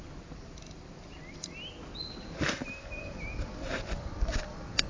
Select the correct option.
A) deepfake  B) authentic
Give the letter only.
B